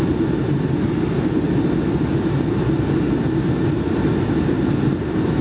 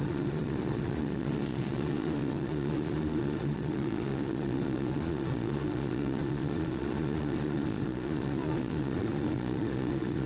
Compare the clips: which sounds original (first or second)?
first